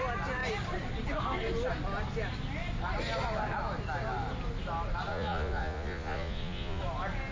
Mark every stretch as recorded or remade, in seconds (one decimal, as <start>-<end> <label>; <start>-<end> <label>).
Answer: 0.0-5.1 recorded; 5.1-6.8 remade; 6.8-7.3 recorded